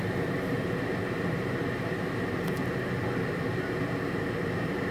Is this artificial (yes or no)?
no